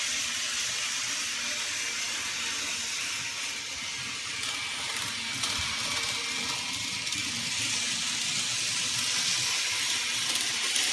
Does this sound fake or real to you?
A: real